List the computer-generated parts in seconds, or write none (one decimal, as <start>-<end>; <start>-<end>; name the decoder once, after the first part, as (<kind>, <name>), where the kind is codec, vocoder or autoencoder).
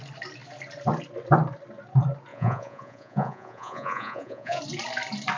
2.3-4.6 (vocoder, Vocos)